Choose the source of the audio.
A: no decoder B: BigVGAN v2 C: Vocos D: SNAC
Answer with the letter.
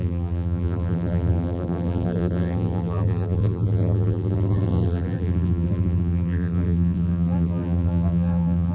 B